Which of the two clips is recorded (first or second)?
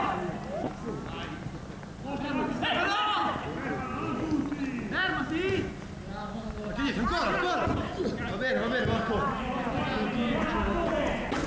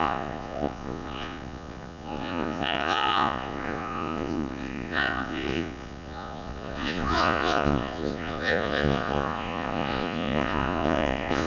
first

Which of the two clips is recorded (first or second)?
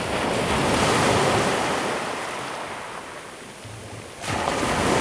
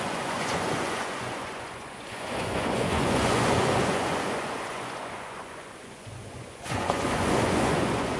first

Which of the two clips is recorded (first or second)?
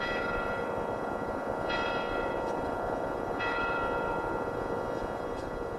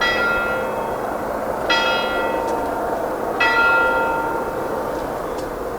second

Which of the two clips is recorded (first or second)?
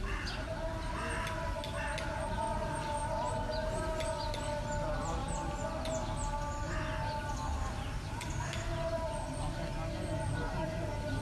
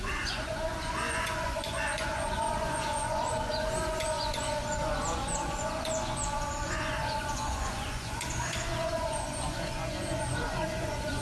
first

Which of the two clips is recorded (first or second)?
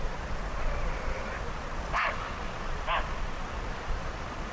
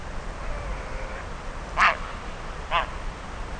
second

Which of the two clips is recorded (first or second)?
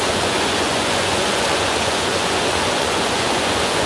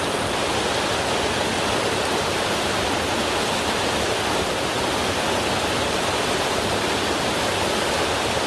second